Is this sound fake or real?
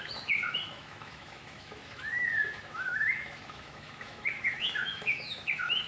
fake